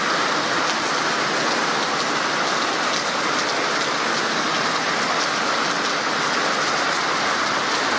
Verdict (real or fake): real